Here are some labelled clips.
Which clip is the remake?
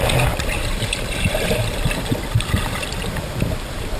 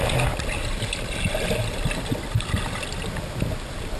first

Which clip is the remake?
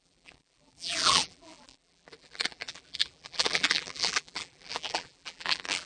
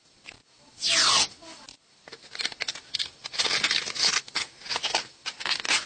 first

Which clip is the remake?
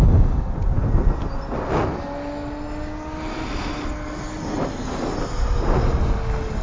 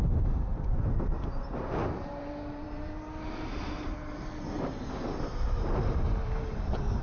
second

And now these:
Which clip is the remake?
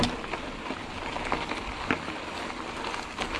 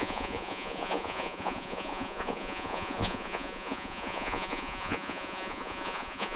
second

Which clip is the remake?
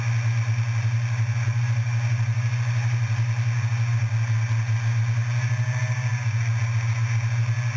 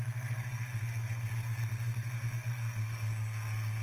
second